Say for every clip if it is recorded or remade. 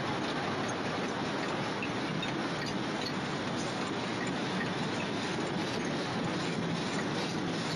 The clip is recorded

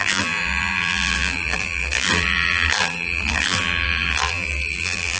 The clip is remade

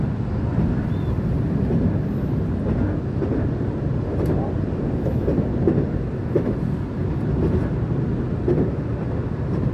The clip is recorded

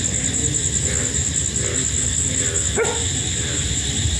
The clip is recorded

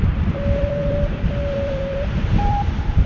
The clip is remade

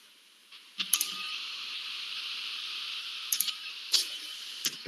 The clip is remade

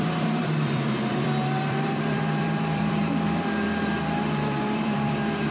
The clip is remade